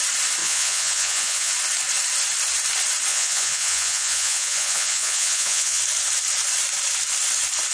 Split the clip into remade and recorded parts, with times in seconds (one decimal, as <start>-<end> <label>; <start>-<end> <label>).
0.0-0.4 recorded; 0.4-1.5 remade; 1.5-3.1 recorded; 3.1-5.8 remade; 5.8-7.7 recorded